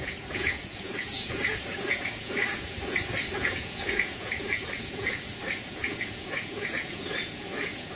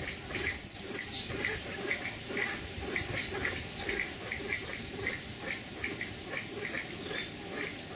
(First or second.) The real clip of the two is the second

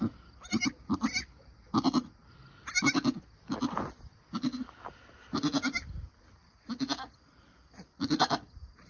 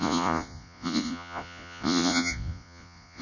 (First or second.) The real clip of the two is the first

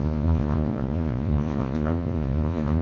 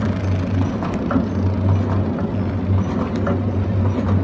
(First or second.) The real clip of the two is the second